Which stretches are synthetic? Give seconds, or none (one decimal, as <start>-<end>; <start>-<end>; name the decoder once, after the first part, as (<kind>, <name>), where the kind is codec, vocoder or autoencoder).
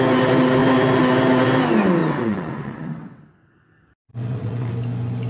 2.0-3.2 (vocoder, WaveNeXt); 4.1-4.7